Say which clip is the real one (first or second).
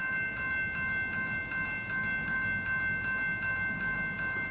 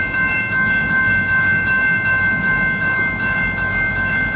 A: first